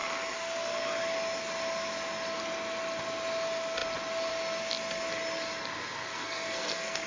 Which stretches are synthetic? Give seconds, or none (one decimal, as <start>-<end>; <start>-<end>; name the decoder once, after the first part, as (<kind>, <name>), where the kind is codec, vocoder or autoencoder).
6.1-7.1 (codec, SNAC)